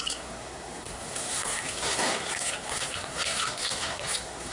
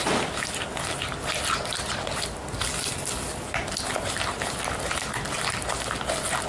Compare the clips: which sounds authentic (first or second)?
second